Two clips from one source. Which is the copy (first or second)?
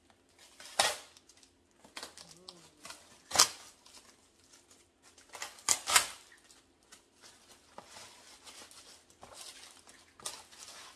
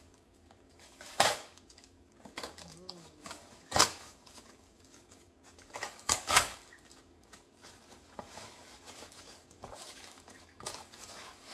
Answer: second